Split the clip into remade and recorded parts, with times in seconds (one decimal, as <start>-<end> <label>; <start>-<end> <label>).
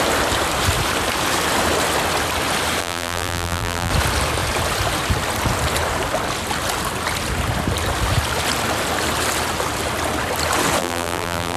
0.0-2.8 recorded; 2.8-3.9 remade; 3.9-10.8 recorded; 10.8-11.6 remade